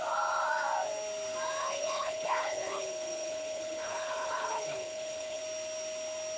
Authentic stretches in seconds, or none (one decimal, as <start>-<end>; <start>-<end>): 0.0-1.6; 5.4-6.4